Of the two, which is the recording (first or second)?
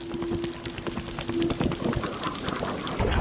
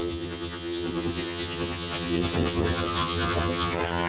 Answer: first